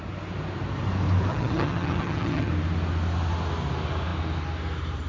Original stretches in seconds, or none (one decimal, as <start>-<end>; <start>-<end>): 0.0-1.3; 2.5-5.1